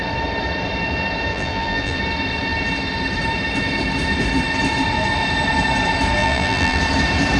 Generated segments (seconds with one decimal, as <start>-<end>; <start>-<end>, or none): 1.3-2.0; 6.2-6.8

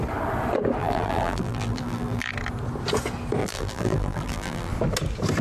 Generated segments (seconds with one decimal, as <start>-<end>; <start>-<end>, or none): 0.8-2.3; 3.4-4.7

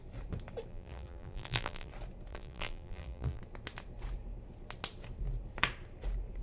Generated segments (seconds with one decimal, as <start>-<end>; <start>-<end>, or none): 0.7-1.9; 2.3-3.4

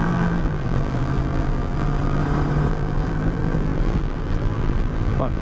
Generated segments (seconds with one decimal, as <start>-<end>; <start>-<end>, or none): 0.0-2.2; 2.7-5.4

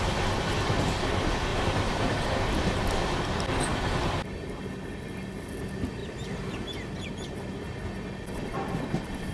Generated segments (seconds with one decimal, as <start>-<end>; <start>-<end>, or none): 1.5-2.2; 6.0-7.3

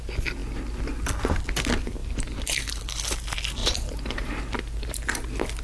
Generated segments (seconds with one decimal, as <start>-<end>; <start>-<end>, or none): 3.6-4.4

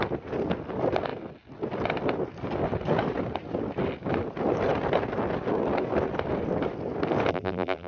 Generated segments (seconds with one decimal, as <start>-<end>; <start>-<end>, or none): 7.3-7.9

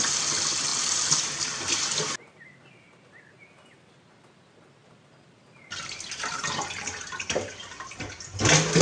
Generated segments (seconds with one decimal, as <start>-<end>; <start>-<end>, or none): 4.8-8.1